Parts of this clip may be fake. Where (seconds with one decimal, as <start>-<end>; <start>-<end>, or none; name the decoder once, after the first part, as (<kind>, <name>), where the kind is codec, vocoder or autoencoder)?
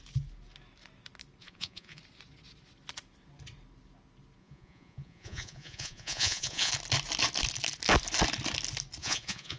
1.4-2.0 (vocoder, Vocos); 4.4-6.7; 9.0-9.6